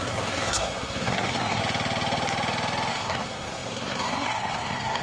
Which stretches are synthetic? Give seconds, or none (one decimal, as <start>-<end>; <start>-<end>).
0.0-1.6; 2.9-5.0